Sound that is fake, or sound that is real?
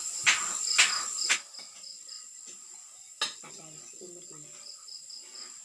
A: real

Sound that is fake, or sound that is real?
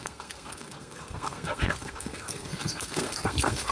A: fake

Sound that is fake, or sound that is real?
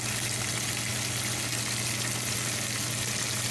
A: real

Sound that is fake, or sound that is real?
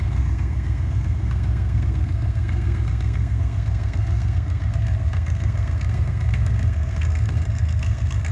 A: fake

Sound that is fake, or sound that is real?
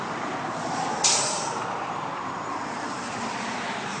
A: real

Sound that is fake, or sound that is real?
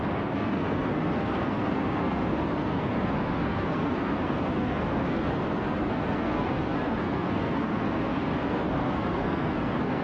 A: fake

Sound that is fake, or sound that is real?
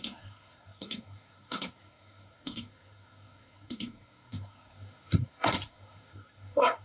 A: fake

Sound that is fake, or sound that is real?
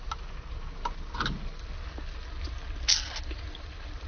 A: real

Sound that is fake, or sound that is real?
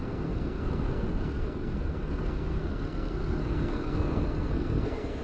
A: fake